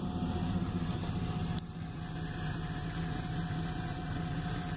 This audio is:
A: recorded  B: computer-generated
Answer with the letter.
B